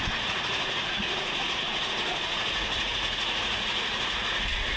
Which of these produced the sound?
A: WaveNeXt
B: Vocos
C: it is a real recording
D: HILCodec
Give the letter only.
B